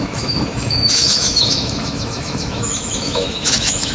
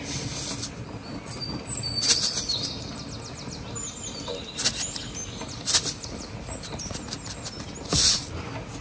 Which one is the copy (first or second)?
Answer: first